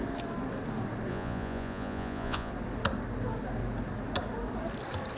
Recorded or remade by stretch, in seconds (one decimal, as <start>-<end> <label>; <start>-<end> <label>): 0.0-1.1 recorded; 1.1-2.5 remade; 2.5-5.2 recorded